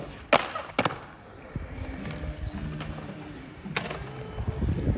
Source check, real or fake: real